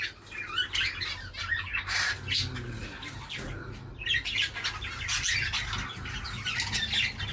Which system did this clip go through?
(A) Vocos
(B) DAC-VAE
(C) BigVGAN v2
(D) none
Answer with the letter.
D